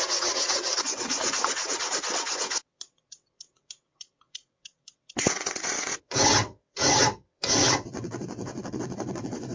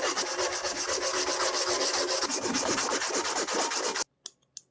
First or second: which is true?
second